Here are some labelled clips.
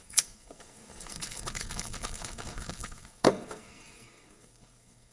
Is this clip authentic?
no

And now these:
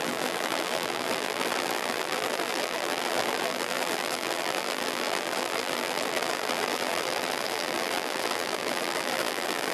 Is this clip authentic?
no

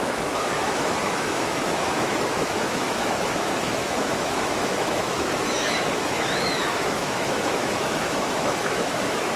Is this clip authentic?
no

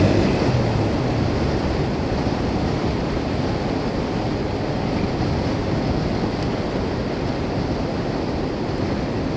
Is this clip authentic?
yes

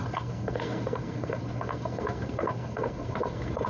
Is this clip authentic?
no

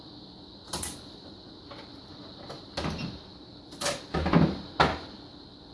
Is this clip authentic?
yes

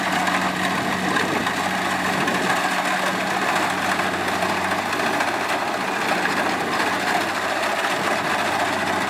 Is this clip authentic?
yes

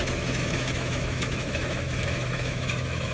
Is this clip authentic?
no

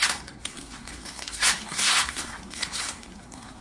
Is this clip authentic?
no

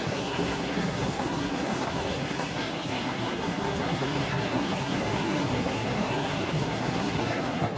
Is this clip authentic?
no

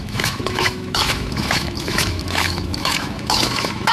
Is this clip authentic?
no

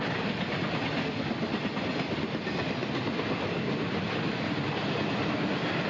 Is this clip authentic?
yes